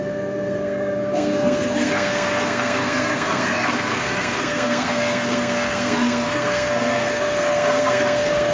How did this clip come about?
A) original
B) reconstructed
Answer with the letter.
B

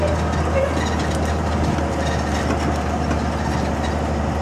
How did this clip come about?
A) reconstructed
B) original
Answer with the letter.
B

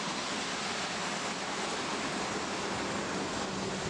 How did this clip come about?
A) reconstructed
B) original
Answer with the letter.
B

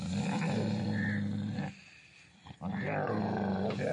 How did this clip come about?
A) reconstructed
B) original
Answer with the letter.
B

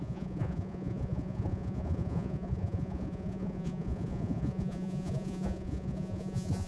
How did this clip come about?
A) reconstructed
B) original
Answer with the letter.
A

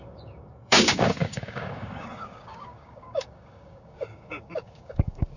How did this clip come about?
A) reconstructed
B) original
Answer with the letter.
A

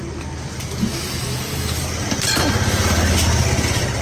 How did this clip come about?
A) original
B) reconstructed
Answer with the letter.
A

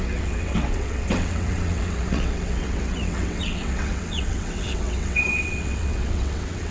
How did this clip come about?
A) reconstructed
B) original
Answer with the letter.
A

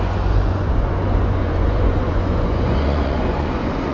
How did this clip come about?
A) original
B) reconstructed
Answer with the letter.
B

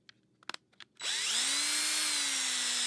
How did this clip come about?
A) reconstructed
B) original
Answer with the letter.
B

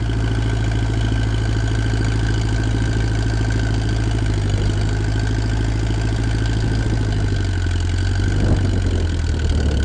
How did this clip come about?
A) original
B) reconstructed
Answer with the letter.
A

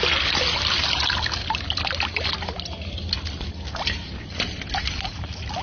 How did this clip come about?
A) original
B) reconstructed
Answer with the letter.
A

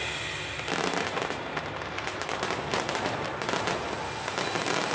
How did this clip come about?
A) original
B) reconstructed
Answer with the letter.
A